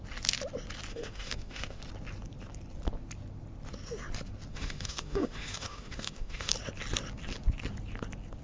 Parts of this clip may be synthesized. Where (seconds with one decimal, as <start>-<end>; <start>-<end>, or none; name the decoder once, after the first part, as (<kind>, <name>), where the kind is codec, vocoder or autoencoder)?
0.9-1.8 (autoencoder, DAC-VAE); 4.5-6.5